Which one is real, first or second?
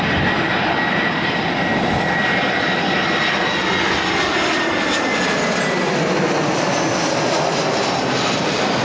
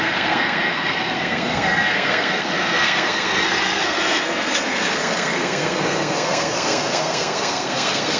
first